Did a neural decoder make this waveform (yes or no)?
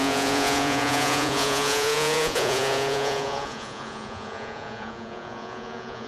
yes